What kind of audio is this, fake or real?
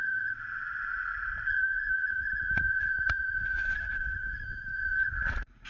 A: fake